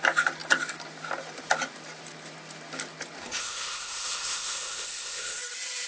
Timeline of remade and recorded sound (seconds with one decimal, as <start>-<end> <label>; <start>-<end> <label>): 0.0-3.2 recorded; 3.2-5.4 remade; 5.4-5.9 recorded